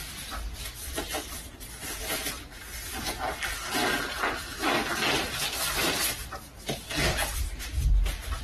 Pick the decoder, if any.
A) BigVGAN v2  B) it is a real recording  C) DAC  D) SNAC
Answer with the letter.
B